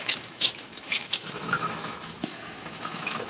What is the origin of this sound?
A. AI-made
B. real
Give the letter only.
A